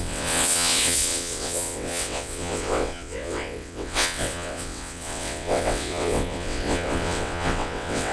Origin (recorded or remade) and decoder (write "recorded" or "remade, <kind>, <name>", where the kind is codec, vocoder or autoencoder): remade, vocoder, WaveNeXt